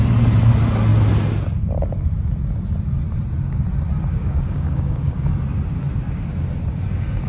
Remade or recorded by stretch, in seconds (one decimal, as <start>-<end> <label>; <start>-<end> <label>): 0.0-4.1 recorded; 4.1-5.3 remade; 5.3-7.3 recorded